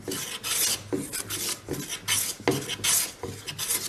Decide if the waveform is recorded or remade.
recorded